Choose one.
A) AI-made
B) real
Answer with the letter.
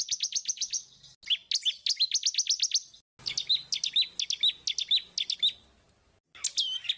B